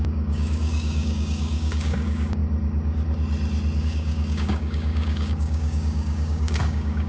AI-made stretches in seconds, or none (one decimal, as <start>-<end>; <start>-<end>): 0.0-2.4; 3.8-7.1